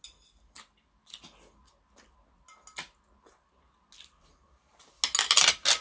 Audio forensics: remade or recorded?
recorded